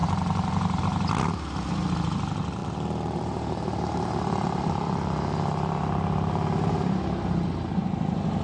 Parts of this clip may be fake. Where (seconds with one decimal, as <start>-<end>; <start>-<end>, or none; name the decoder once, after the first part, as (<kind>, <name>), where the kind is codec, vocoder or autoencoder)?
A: 0.0-0.8 (vocoder, BigVGAN v2); 2.6-7.1